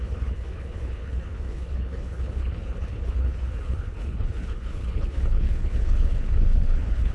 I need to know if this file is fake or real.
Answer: fake